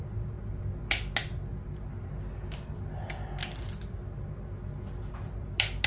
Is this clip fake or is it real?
real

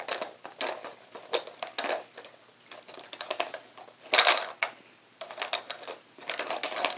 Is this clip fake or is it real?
real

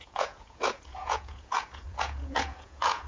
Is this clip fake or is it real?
fake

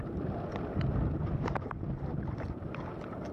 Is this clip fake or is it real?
real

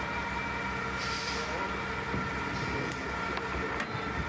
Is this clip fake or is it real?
real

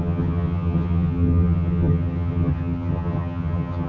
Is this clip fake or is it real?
fake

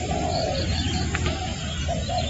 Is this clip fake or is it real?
fake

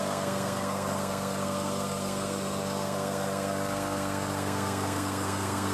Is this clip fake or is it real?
fake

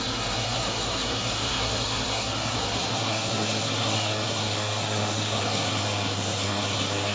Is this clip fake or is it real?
fake